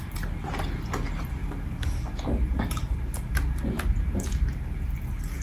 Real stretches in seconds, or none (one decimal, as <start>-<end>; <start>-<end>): 0.0-5.4

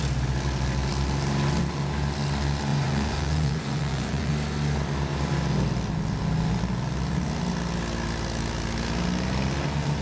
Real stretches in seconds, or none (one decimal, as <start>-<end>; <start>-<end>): 0.0-2.7; 4.3-10.0

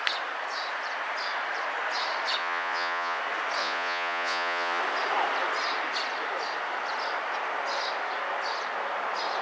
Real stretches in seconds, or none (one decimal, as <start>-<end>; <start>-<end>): 0.0-2.4; 3.2-3.6; 4.8-9.4

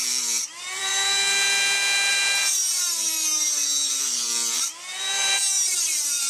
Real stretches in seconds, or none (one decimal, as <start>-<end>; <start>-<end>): 0.9-2.1; 2.6-3.9

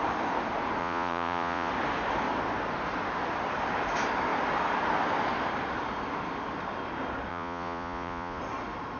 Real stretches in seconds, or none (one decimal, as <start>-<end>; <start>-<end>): 0.0-0.8; 1.7-7.3; 8.4-9.0

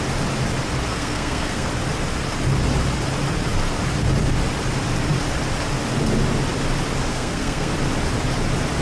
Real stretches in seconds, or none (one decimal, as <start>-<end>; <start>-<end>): 0.0-0.9; 1.7-7.1; 7.7-8.8

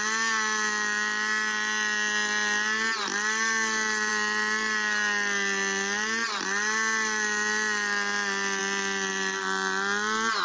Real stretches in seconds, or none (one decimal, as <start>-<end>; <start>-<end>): 0.0-10.4

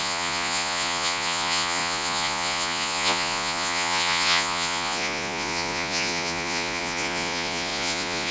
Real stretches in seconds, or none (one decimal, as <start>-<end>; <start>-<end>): none